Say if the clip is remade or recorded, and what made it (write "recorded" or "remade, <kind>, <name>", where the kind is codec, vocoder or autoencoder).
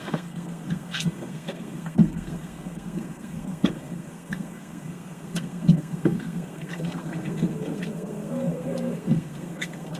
remade, codec, SNAC